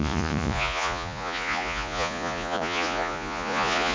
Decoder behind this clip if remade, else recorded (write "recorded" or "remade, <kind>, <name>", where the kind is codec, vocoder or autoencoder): remade, vocoder, Vocos